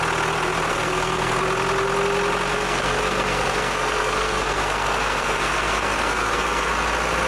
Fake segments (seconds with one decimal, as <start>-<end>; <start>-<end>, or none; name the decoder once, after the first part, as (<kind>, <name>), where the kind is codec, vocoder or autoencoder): 0.7-1.4 (codec, SNAC); 2.5-6.7